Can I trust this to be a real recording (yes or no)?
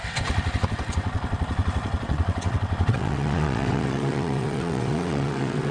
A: no